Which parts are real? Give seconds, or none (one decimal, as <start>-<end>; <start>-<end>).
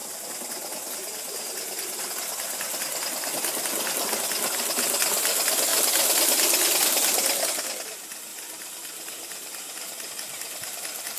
2.1-8.3; 10.1-11.2